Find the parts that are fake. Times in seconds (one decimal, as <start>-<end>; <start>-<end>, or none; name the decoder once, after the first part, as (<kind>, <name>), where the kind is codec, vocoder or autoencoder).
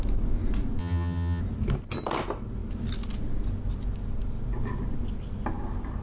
0.8-1.4 (vocoder, HiFi-GAN)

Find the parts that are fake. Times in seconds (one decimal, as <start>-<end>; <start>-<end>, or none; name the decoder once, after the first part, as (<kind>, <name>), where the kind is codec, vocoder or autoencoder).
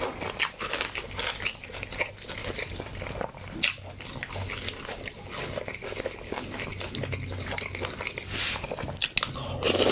none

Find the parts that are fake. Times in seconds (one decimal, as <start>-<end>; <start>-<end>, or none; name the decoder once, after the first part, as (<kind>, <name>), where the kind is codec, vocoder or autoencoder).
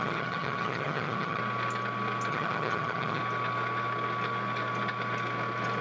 0.0-1.4 (vocoder, HiFi-GAN); 2.3-3.2